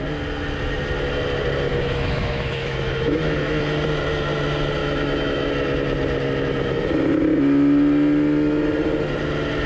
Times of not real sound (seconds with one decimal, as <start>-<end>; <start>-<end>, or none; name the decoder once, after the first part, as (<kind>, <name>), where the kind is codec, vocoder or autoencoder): 1.7-3.6 (autoencoder, DAC-VAE); 4.8-5.5